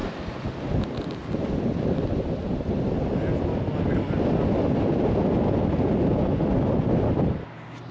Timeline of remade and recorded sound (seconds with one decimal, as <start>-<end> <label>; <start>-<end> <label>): 0.0-7.9 recorded